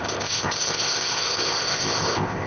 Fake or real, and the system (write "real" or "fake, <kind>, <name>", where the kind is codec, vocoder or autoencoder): fake, codec, ZipCodec